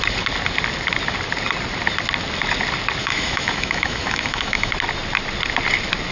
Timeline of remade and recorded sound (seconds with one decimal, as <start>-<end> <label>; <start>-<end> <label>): 0.0-3.0 recorded; 3.0-4.7 remade; 4.7-6.1 recorded